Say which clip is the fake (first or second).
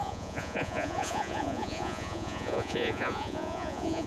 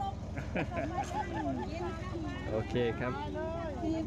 first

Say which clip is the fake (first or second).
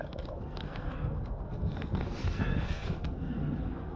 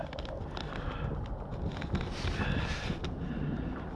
first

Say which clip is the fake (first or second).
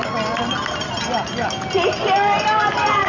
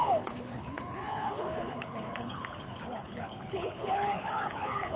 second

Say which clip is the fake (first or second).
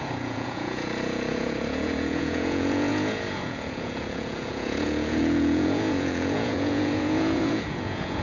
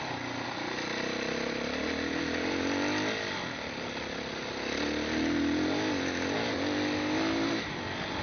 first